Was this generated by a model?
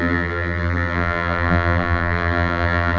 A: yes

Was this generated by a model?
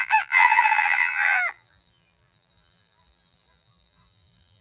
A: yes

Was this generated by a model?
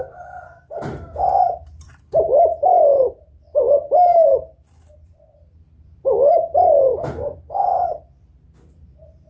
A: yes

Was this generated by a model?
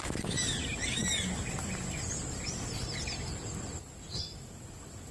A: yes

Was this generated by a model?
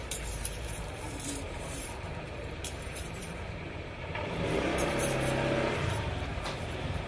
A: yes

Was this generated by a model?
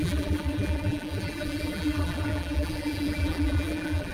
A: yes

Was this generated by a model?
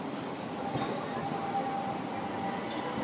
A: no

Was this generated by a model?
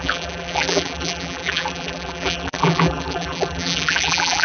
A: yes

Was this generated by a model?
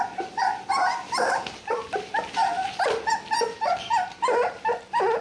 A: no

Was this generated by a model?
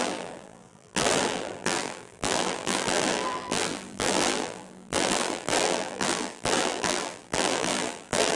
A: yes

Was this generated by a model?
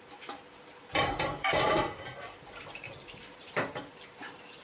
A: yes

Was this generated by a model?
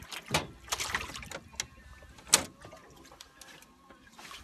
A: no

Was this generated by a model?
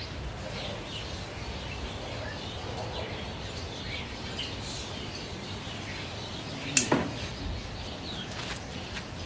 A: no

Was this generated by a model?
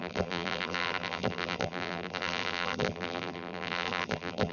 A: yes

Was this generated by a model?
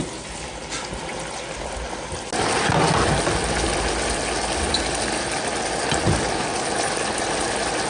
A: no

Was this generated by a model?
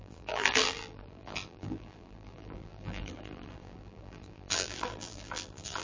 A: yes